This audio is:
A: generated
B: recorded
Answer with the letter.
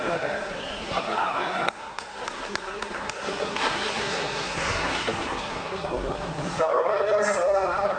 A